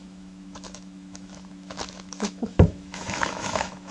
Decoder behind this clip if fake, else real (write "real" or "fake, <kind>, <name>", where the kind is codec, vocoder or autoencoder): fake, autoencoder, DAC-VAE